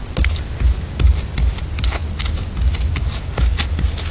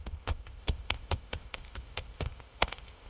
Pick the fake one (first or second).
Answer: second